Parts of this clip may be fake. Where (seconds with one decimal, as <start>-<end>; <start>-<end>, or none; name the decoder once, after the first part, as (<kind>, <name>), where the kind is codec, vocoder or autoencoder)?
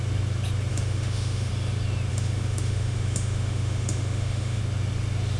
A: 0.7-1.5 (autoencoder, DAC-VAE); 2.1-4.6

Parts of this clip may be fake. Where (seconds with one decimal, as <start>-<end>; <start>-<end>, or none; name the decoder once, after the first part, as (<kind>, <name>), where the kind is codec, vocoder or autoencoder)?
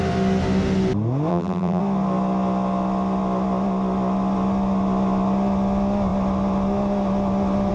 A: 1.3-1.8 (vocoder, BigVGAN v2)